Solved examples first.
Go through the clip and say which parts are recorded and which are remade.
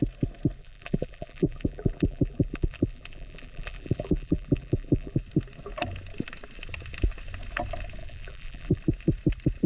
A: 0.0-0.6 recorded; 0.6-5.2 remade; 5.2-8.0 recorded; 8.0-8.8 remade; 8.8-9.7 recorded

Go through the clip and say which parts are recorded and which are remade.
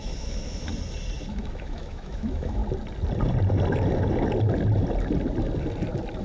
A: 0.0-0.7 remade; 0.7-1.3 recorded; 1.3-2.6 remade; 2.6-6.2 recorded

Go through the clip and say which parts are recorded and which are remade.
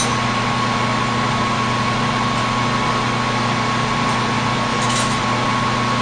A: 0.0-4.7 recorded; 4.7-5.2 remade; 5.2-6.0 recorded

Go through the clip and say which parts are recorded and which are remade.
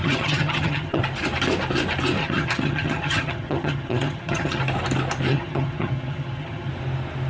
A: 0.0-1.0 remade; 1.0-2.2 recorded; 2.2-4.6 remade; 4.6-5.3 recorded; 5.3-6.7 remade; 6.7-7.3 recorded